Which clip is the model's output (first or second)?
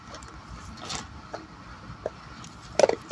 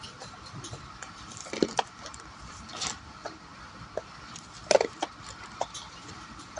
second